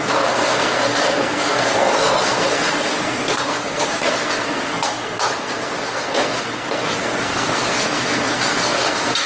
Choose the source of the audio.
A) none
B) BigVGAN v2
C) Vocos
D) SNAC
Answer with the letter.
D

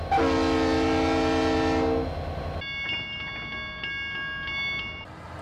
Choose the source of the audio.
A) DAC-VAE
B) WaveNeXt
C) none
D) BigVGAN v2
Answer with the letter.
C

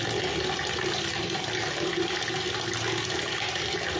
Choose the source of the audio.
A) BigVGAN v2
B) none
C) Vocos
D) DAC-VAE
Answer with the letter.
B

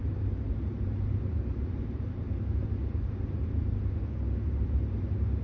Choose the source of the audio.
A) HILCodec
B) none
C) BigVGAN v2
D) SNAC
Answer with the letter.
C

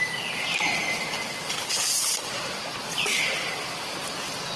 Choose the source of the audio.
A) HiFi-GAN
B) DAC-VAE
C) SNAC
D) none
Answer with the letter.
D